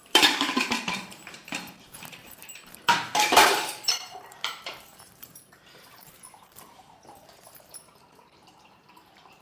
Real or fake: fake